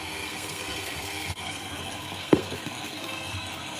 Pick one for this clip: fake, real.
fake